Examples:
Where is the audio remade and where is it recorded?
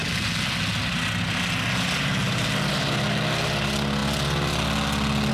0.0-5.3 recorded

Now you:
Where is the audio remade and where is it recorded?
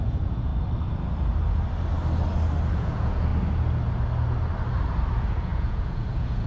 0.0-0.5 remade; 0.5-2.7 recorded; 2.7-3.3 remade; 3.3-5.1 recorded; 5.1-6.5 remade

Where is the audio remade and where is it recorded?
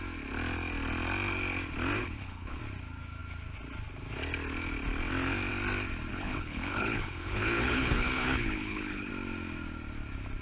0.0-2.0 recorded; 2.0-2.6 remade; 2.6-6.1 recorded; 6.1-9.1 remade; 9.1-10.4 recorded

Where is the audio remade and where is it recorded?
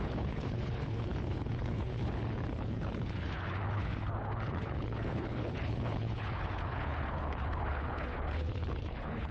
0.0-9.3 remade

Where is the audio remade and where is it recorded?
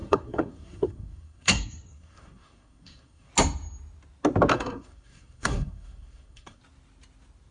0.0-3.3 remade; 3.3-4.5 recorded; 4.5-6.6 remade; 6.6-7.5 recorded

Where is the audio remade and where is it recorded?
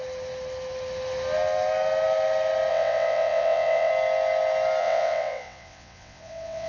0.0-2.7 recorded; 2.7-3.9 remade; 3.9-4.8 recorded; 4.8-6.7 remade